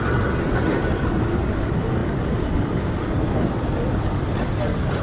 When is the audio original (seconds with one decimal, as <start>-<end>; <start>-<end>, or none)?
0.0-5.0